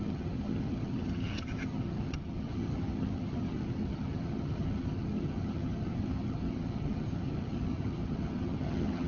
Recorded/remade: remade